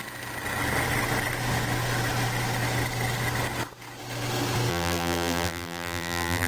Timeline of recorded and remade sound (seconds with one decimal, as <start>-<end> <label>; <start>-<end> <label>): 0.0-4.7 recorded; 4.7-6.5 remade